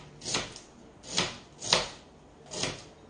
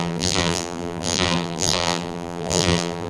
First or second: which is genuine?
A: first